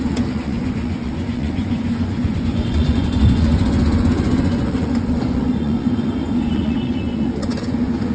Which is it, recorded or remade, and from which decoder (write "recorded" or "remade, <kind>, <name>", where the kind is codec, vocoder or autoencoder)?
remade, vocoder, Vocos